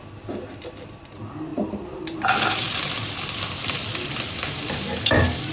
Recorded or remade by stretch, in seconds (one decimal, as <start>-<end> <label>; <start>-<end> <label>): 0.0-5.5 recorded